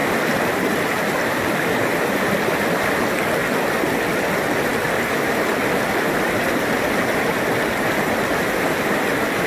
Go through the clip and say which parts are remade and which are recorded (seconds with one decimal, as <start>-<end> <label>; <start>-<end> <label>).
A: 0.0-9.5 recorded